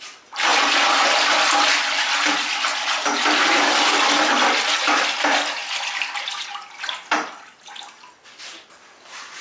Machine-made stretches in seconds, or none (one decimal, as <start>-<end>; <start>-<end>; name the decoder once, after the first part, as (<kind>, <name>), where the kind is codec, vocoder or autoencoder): none